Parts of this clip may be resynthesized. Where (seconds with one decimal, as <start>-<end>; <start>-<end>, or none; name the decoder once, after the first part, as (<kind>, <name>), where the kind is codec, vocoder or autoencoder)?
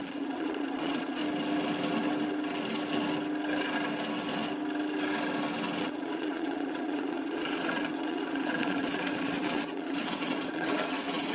0.0-1.2 (vocoder, Vocos); 5.8-11.3